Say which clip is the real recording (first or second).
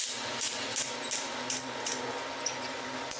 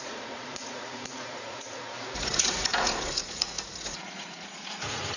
first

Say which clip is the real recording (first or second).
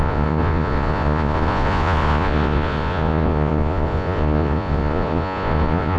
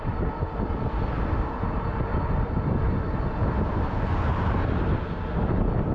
second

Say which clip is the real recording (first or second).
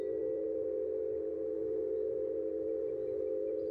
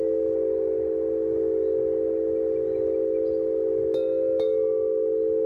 second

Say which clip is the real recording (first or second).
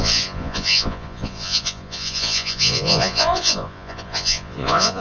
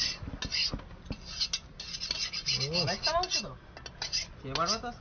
second